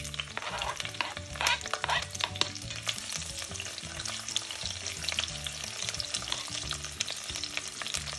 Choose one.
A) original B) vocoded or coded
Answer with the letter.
A